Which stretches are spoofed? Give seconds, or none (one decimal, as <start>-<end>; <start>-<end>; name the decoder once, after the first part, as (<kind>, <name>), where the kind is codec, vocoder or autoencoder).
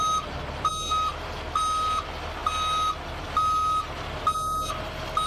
none